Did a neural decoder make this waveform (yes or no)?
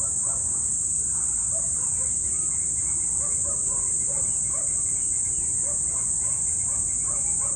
no